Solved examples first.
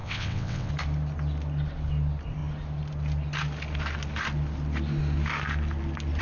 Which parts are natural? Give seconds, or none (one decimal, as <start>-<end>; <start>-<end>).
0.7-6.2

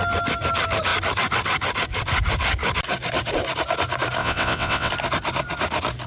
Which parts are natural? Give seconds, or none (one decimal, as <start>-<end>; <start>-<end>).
0.0-4.2; 4.9-6.1

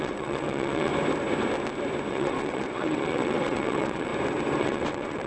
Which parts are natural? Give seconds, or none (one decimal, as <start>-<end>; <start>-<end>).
0.9-2.1; 4.1-4.6

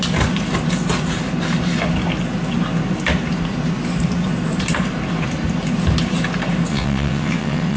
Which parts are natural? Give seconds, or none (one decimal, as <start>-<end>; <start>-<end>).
0.0-6.7

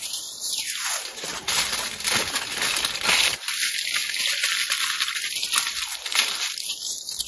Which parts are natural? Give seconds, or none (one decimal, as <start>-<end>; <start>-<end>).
0.0-7.3

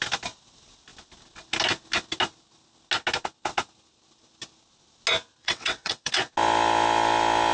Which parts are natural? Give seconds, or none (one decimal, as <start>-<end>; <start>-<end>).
0.0-5.4; 6.1-7.5